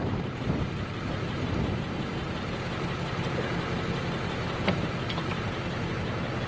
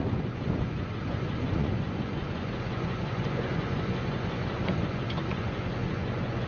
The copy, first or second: second